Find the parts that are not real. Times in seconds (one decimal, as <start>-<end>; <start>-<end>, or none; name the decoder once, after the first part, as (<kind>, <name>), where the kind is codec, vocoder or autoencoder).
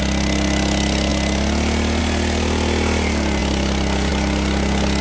none